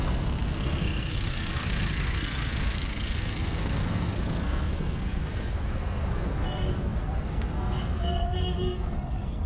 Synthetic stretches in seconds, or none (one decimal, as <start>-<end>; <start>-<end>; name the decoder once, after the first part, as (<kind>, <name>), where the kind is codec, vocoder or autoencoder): 0.0-9.5 (codec, SNAC)